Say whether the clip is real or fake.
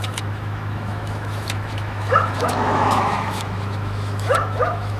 fake